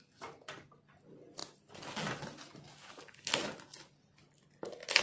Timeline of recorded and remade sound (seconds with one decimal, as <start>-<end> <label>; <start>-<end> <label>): 0.0-5.0 recorded